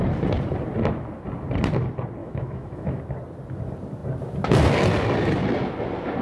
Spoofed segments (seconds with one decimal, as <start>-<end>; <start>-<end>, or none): 2.2-3.0